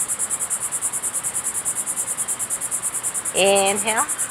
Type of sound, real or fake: real